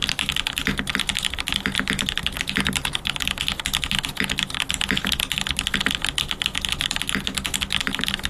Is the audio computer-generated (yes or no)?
no